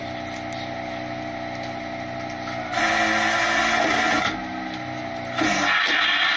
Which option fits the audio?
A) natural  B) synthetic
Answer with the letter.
A